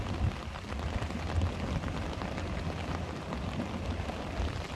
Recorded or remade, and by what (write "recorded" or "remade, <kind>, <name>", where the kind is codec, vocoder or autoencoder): recorded